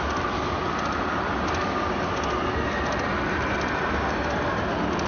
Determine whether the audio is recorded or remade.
recorded